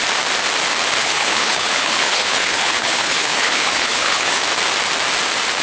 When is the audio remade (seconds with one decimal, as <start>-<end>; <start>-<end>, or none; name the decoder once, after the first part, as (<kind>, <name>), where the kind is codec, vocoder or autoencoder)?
1.0-4.4 (codec, HILCodec)